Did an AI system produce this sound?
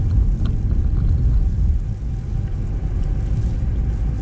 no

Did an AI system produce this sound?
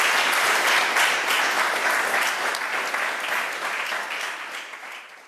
no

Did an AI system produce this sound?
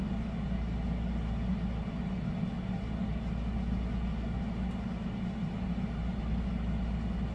no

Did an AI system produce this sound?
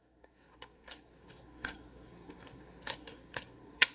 yes